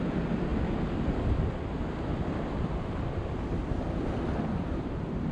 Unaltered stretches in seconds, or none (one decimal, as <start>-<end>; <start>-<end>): 0.0-5.3